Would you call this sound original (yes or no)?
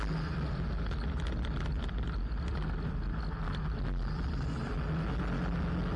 yes